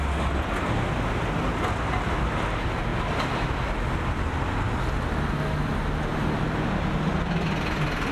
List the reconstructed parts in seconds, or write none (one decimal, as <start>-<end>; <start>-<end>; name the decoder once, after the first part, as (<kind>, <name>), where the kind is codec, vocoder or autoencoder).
none